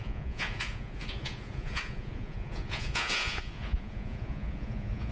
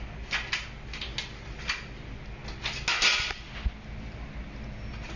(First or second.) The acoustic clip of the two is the second